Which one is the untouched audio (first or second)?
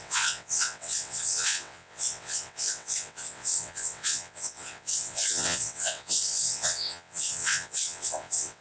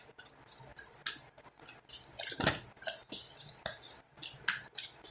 second